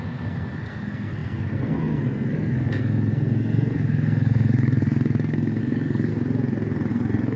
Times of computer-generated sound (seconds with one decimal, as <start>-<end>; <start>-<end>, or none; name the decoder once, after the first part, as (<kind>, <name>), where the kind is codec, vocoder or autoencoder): 0.0-6.1 (codec, SNAC); 6.9-7.4